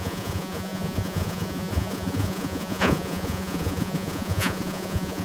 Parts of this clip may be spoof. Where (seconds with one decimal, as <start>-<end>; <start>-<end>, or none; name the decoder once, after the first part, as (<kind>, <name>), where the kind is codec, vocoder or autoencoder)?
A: 0.0-5.2 (vocoder, Vocos)